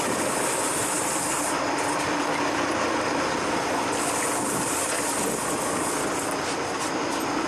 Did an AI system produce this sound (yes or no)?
no